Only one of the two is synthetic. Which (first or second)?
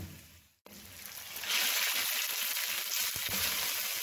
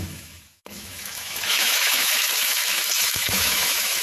second